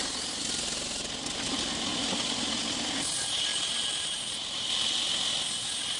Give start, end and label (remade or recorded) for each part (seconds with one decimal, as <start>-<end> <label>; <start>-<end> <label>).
0.0-3.5 recorded; 3.5-4.7 remade; 4.7-6.0 recorded